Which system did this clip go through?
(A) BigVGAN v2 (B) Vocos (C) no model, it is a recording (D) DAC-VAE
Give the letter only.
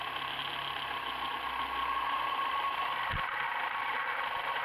C